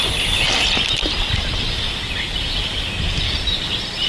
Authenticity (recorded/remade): recorded